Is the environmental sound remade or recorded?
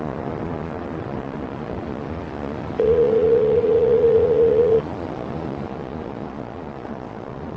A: remade